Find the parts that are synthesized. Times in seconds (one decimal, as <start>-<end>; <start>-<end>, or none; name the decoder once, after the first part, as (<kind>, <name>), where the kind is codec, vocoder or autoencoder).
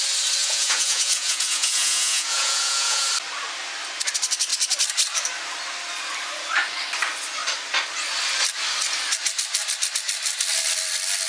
0.4-3.1 (vocoder, Vocos)